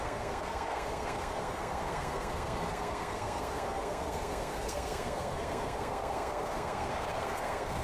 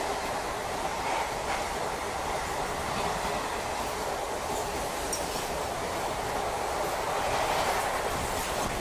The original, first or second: second